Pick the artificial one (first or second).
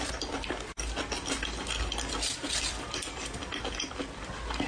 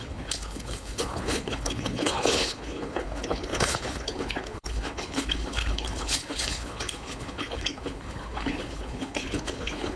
second